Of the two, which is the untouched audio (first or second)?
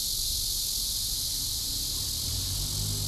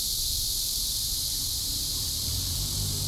first